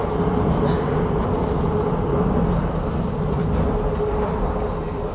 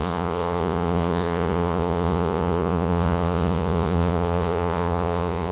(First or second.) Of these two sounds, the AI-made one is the second